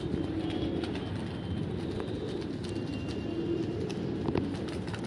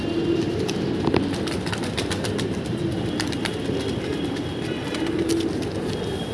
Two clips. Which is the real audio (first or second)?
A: first